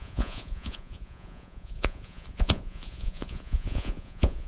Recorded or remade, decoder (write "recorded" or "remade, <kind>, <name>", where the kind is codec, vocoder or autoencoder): remade, vocoder, Vocos